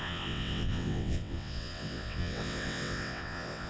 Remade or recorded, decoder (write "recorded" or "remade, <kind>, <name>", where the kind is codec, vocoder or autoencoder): remade, vocoder, WaveNeXt